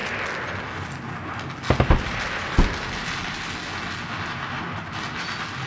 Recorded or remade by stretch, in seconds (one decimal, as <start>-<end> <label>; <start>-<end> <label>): 0.0-5.7 recorded